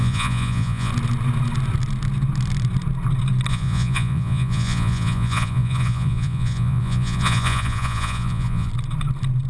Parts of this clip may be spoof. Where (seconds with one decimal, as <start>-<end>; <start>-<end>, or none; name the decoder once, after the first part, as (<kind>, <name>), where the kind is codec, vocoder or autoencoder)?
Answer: 0.0-0.9 (vocoder, Vocos); 3.5-8.7